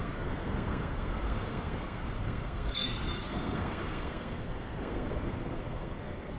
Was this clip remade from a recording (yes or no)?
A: yes